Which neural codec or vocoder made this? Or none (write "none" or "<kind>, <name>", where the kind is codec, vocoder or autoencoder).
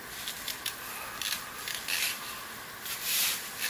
vocoder, BigVGAN v2